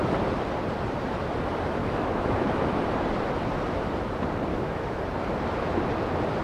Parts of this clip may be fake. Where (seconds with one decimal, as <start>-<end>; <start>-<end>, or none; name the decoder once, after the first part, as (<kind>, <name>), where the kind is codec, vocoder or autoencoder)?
1.8-2.8 (autoencoder, DAC-VAE); 4.5-5.0